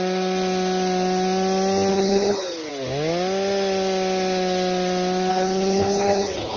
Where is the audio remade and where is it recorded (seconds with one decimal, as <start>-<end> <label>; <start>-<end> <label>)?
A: 0.0-1.9 recorded; 1.9-2.7 remade; 2.7-5.3 recorded; 5.3-6.6 remade